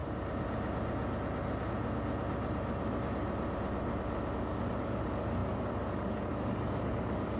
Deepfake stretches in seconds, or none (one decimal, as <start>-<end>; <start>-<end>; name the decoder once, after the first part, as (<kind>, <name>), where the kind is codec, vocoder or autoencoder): 4.4-7.4 (codec, DAC)